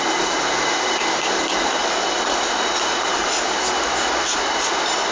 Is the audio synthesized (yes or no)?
no